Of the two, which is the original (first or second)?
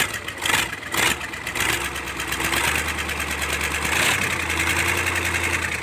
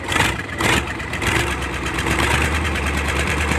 first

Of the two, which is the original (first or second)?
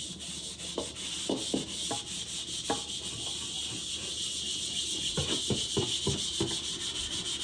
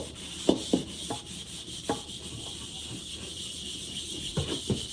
first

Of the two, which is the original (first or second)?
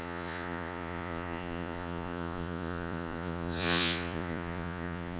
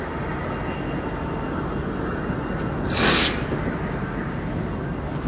second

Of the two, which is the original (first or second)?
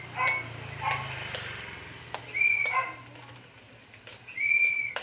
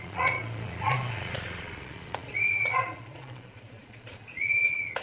first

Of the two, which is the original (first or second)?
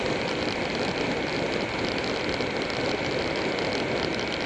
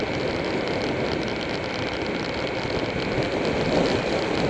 second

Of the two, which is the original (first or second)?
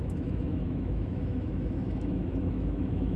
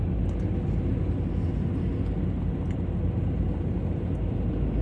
second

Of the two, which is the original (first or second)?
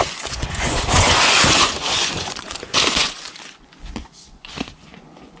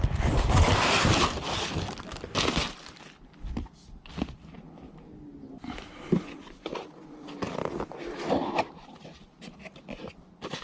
second